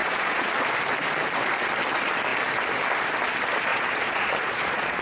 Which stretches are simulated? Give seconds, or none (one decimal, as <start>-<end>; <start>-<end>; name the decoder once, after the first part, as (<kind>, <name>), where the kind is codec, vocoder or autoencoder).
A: 0.0-0.5 (vocoder, Vocos); 3.7-5.0

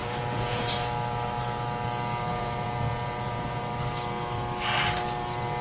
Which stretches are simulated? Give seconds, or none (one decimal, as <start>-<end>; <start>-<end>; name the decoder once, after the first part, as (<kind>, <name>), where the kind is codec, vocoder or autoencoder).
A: 0.0-0.6 (vocoder, Vocos); 2.3-3.6

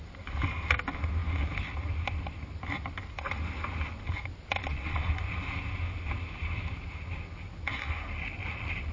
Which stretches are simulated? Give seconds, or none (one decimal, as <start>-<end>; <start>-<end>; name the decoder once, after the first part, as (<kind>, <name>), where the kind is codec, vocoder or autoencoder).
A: 4.6-5.1 (vocoder, Vocos)

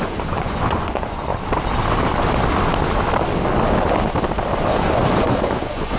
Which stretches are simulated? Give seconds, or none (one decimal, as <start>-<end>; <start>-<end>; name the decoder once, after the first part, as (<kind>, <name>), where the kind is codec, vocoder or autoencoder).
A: 0.0-1.3 (vocoder, Vocos); 4.7-6.0

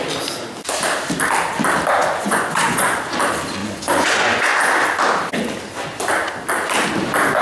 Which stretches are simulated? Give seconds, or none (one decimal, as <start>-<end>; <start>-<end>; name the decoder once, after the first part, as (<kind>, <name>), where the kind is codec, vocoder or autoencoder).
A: 2.0-3.0 (vocoder, Vocos); 3.6-4.7